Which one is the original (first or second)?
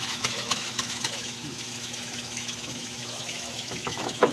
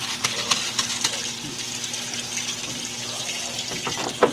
second